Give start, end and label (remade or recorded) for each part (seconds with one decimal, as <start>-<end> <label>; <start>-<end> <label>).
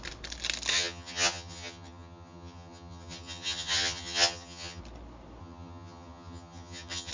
0.0-0.7 recorded; 0.7-4.8 remade; 4.8-5.4 recorded; 5.4-7.1 remade